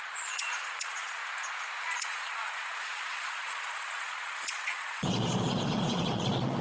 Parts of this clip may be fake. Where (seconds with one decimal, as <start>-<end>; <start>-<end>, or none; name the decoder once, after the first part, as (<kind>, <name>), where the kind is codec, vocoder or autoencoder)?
0.0-1.2 (vocoder, Vocos); 1.8-6.6

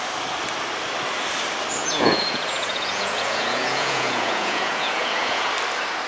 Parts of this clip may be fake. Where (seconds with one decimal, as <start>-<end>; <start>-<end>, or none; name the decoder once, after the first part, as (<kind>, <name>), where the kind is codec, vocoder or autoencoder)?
1.8-5.5 (vocoder, Vocos)

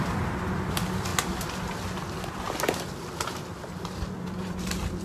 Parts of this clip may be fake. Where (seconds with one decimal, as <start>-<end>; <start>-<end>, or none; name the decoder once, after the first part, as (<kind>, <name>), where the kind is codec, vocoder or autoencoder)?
0.0-1.1 (vocoder, BigVGAN v2); 4.1-5.0

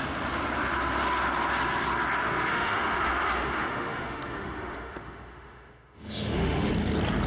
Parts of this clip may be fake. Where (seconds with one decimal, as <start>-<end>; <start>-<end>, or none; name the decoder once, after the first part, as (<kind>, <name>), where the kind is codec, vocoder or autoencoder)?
2.5-6.7 (autoencoder, DAC-VAE)

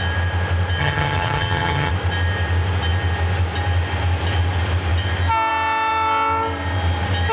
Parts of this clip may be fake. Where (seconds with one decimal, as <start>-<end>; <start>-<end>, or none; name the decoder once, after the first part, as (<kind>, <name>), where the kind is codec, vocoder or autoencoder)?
0.8-1.9 (vocoder, HiFi-GAN)